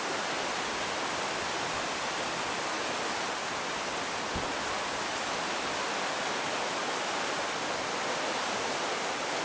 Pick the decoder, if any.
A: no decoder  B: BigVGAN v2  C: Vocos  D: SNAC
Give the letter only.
A